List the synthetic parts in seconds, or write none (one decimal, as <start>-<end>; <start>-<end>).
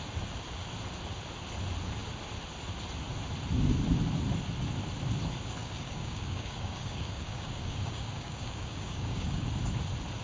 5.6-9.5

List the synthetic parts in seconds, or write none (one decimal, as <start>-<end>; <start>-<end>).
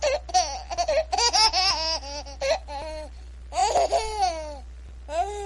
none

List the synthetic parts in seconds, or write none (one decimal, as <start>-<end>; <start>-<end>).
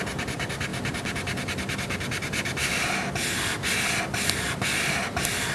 none